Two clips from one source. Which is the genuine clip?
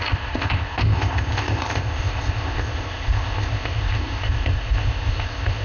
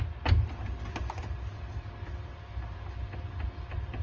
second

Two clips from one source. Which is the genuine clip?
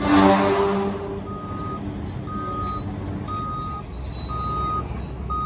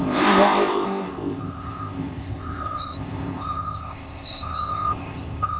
first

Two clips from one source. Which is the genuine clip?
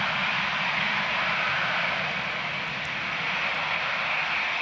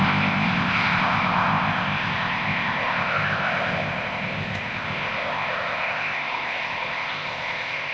first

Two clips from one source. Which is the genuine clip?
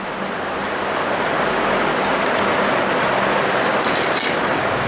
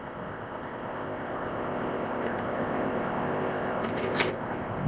first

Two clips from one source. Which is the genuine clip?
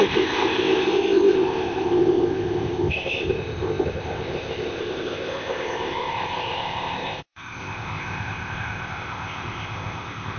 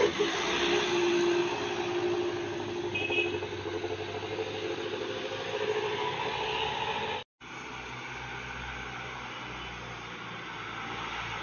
second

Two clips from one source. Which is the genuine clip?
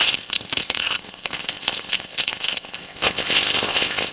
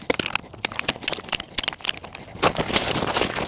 second